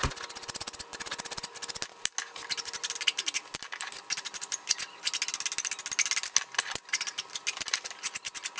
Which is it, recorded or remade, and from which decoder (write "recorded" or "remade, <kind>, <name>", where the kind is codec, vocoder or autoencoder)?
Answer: recorded